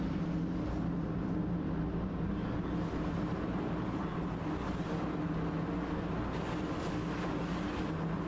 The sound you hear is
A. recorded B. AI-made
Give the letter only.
A